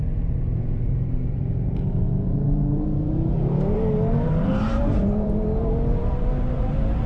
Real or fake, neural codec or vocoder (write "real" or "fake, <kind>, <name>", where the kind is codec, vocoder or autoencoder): fake, vocoder, BigVGAN v2